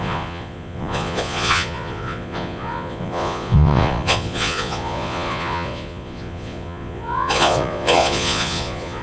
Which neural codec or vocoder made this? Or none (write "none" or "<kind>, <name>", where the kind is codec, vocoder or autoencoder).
vocoder, Vocos